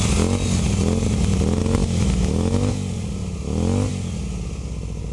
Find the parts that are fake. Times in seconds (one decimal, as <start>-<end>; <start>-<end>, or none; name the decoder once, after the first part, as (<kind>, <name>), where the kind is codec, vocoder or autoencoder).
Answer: 1.6-2.7 (autoencoder, DAC-VAE)